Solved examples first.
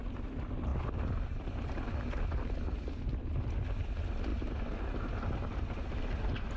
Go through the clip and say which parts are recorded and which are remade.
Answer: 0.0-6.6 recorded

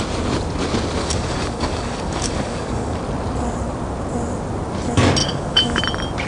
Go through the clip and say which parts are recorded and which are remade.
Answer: 0.0-1.0 recorded; 1.0-3.0 remade; 3.0-5.2 recorded; 5.2-5.8 remade; 5.8-6.3 recorded

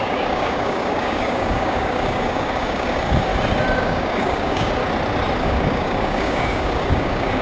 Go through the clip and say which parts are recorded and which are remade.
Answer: 0.0-3.3 remade; 3.3-3.8 recorded; 3.8-4.8 remade; 4.8-5.4 recorded; 5.4-7.4 remade

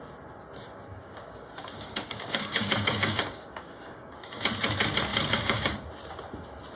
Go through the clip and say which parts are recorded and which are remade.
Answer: 0.0-0.9 recorded; 0.9-4.4 remade; 4.4-5.1 recorded; 5.1-5.9 remade; 5.9-6.8 recorded

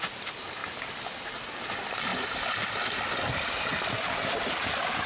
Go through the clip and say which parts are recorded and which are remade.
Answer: 0.0-5.1 recorded